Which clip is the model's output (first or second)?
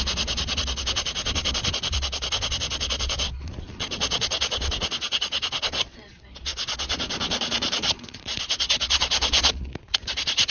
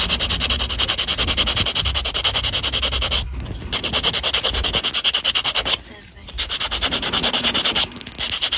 first